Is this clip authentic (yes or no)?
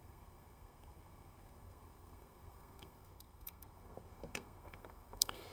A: no